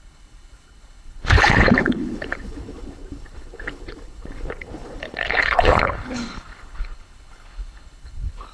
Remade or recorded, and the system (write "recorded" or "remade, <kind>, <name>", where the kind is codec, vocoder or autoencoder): remade, codec, HILCodec